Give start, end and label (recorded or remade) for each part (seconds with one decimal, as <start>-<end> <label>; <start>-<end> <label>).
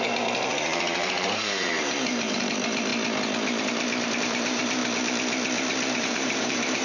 0.0-2.9 remade; 2.9-4.2 recorded; 4.2-4.8 remade; 4.8-6.0 recorded; 6.0-6.8 remade